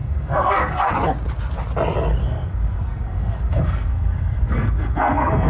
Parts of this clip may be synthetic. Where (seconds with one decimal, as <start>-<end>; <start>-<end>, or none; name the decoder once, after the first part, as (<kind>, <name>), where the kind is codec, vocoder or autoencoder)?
0.0-0.9 (codec, SNAC); 2.2-5.5